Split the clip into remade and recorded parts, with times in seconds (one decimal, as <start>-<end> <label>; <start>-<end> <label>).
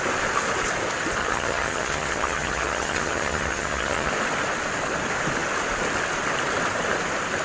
0.0-1.2 recorded; 1.2-4.1 remade; 4.1-7.4 recorded